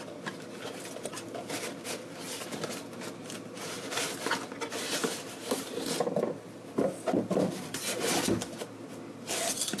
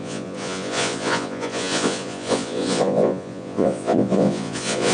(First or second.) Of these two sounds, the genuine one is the first